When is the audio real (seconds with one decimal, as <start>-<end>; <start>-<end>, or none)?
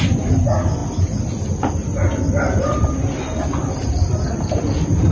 0.0-5.1